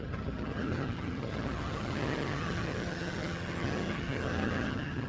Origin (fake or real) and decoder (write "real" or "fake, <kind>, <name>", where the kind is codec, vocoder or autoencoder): fake, vocoder, HiFi-GAN